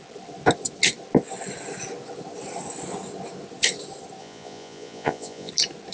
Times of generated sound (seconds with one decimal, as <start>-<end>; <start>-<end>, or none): 4.2-5.5